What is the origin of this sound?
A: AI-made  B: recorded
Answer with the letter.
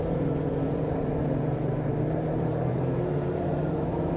A